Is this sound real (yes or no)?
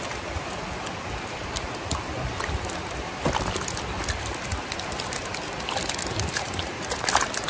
yes